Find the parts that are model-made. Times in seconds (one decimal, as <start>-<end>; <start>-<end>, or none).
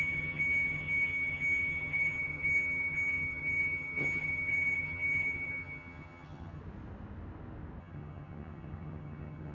0.0-6.6; 7.8-9.5